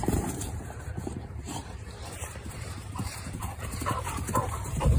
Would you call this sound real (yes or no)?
no